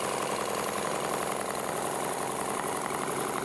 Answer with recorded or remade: recorded